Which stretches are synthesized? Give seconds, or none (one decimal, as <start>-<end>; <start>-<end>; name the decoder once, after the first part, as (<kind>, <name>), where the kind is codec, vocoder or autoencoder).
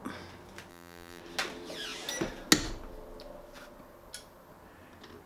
0.7-1.2 (vocoder, BigVGAN v2)